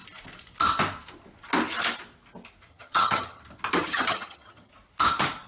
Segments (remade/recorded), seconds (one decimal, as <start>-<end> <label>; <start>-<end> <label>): 0.0-2.7 recorded; 2.7-3.4 remade; 3.4-3.8 recorded; 3.8-4.7 remade; 4.7-5.5 recorded